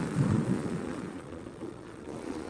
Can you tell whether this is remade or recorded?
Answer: remade